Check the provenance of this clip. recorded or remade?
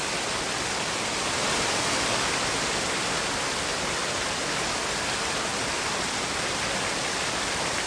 recorded